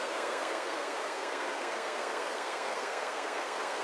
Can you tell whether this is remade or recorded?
remade